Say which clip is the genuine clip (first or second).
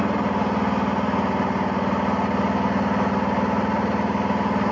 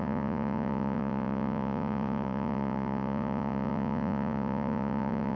first